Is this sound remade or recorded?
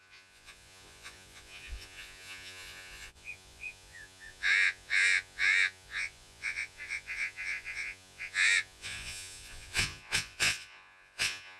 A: remade